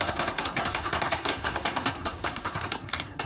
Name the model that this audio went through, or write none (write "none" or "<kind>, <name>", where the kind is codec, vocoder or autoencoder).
codec, SNAC